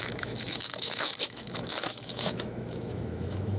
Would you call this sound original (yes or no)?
no